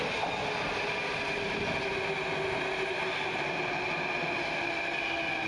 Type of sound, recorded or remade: recorded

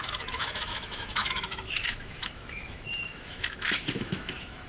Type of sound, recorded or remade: remade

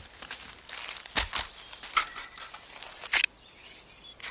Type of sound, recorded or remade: recorded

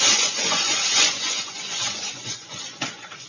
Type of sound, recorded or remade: remade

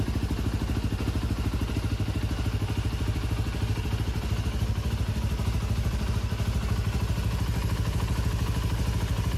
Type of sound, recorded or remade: recorded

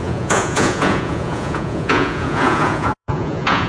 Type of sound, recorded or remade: remade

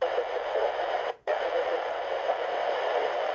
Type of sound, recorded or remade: remade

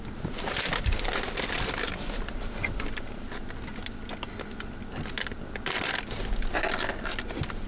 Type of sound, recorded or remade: recorded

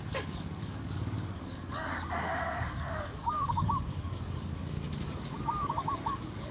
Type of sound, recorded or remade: remade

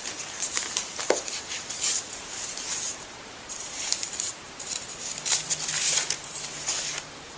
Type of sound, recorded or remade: remade